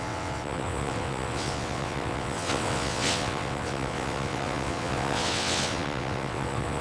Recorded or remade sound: remade